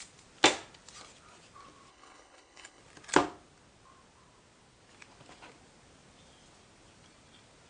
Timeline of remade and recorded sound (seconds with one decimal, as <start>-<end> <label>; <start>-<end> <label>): 0.0-1.9 recorded; 1.9-2.8 remade; 2.8-7.7 recorded